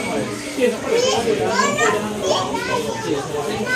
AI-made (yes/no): no